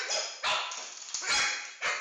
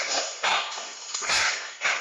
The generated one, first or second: second